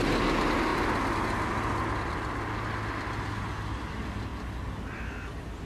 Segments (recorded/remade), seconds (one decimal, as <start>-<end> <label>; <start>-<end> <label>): 0.0-5.7 recorded